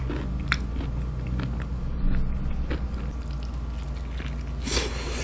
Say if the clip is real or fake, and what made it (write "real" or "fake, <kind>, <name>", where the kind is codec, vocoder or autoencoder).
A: real